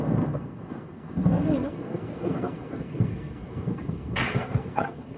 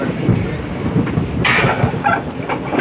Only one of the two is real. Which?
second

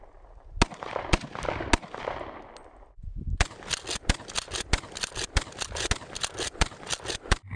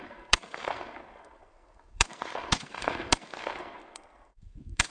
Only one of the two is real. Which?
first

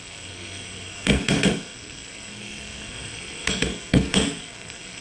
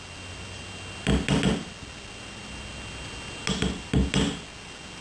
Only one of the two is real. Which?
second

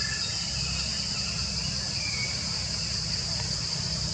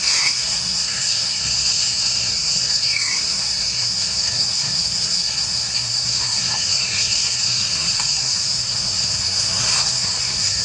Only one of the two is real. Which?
first